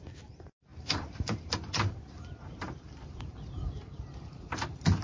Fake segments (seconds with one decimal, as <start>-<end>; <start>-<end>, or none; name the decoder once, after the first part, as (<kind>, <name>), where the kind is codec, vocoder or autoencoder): 0.0-5.0 (vocoder, BigVGAN v2)